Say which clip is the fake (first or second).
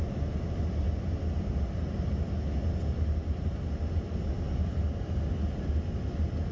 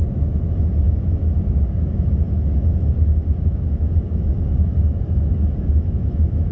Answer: second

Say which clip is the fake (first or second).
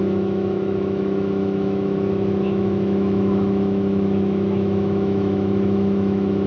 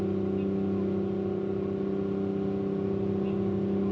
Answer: first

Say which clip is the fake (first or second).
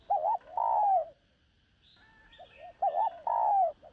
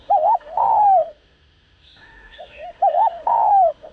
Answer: second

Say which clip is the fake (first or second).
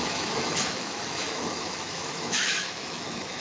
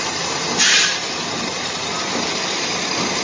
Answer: first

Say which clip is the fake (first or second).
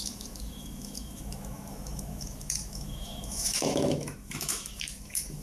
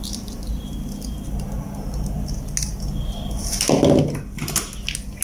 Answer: first